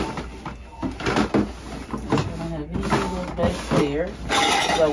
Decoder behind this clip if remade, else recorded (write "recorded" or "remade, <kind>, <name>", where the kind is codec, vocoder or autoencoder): recorded